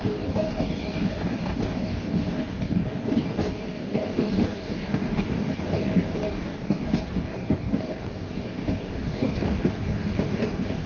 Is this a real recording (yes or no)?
no